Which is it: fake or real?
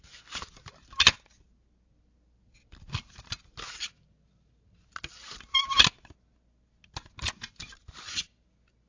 real